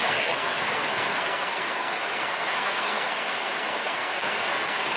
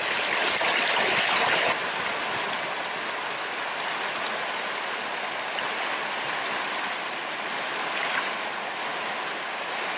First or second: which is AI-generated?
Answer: first